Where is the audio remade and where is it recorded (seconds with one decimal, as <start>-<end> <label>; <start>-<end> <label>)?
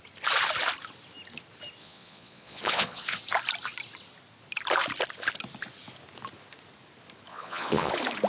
0.0-1.8 recorded; 1.8-3.2 remade; 3.2-7.3 recorded; 7.3-7.9 remade; 7.9-8.3 recorded